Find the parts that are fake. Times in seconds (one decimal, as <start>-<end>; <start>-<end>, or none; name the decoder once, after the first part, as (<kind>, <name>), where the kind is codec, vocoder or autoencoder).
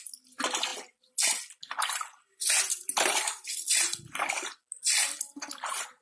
none